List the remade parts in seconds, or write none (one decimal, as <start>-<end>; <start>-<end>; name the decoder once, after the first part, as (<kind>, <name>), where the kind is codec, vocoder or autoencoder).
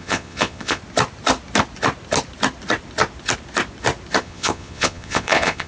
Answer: 0.0-0.8 (vocoder, Vocos); 4.2-5.7